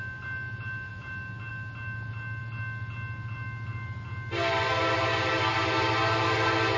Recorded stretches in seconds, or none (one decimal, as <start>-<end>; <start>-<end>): 0.0-6.8